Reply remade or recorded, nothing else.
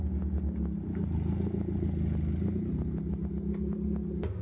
recorded